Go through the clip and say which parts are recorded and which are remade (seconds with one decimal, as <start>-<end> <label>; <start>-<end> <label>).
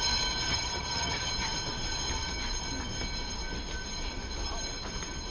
0.0-0.5 recorded; 0.5-1.3 remade; 1.3-5.3 recorded